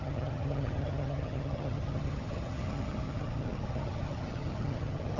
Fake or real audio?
fake